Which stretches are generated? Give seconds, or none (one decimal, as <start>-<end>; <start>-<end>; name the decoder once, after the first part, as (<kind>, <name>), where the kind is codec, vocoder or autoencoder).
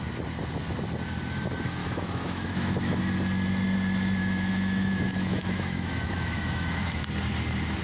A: 1.8-3.0 (autoencoder, DAC-VAE); 4.2-7.0